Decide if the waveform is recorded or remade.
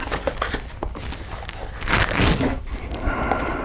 recorded